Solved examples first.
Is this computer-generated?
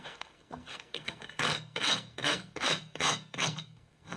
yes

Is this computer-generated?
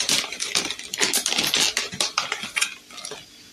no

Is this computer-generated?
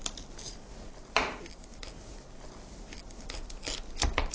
no